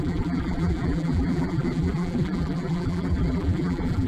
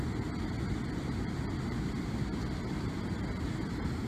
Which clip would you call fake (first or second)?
first